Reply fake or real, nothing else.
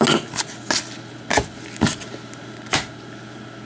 real